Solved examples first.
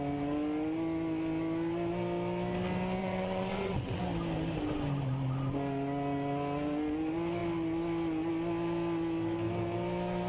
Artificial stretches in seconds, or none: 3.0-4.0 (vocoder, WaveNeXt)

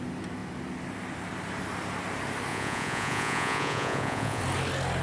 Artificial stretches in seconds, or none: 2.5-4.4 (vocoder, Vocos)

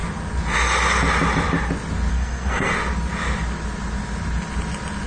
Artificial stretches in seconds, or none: 2.1-2.7 (codec, SNAC)